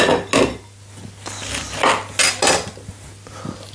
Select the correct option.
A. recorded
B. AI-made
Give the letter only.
A